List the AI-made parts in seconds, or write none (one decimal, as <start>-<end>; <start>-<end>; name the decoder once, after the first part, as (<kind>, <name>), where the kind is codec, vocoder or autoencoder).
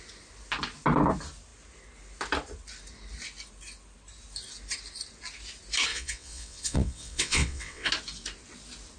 5.9-7.9 (vocoder, WaveNeXt)